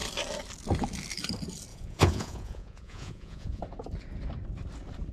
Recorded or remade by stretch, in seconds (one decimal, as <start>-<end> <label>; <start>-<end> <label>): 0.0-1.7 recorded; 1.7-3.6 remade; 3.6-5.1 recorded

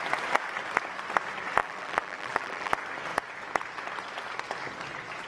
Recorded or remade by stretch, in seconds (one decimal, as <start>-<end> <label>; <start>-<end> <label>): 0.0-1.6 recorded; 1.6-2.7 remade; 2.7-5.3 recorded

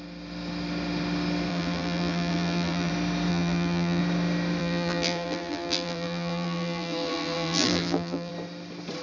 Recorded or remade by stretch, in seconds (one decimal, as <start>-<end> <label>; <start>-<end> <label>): 0.0-1.5 recorded; 1.5-2.9 remade; 2.9-3.3 recorded; 3.3-4.0 remade; 4.0-4.6 recorded; 4.6-8.3 remade; 8.3-9.0 recorded